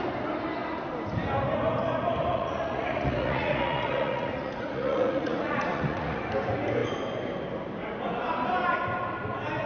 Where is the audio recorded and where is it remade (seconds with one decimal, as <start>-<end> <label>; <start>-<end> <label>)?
0.0-2.3 recorded; 2.3-6.2 remade; 6.2-9.7 recorded